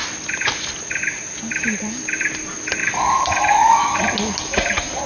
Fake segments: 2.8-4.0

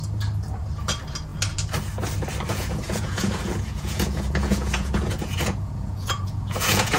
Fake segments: 2.5-7.0

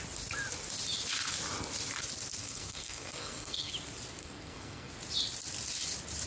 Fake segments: 2.4-3.7; 4.2-4.9

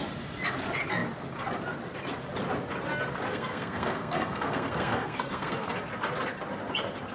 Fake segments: 3.3-5.7

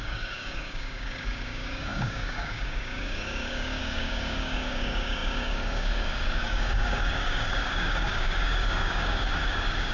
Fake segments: 0.0-9.9